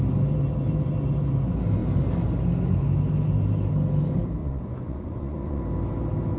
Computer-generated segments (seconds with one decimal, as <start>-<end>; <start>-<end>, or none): 4.4-5.6

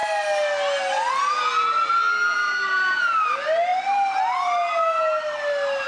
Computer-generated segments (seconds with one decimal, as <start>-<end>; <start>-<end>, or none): none